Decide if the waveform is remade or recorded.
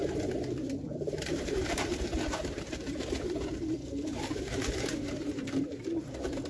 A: remade